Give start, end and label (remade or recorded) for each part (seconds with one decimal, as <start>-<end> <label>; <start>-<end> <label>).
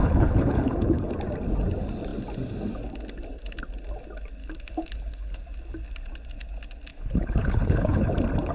0.0-1.1 remade; 1.1-4.4 recorded; 4.4-5.4 remade; 5.4-6.9 recorded; 6.9-8.1 remade; 8.1-8.5 recorded